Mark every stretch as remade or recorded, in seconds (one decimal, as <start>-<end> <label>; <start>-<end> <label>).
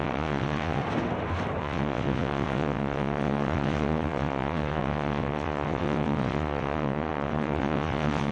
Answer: 0.0-0.8 remade; 0.8-1.6 recorded; 1.6-8.3 remade